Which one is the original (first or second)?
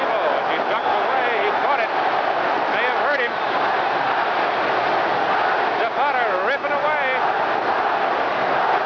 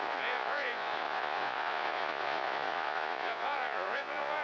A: first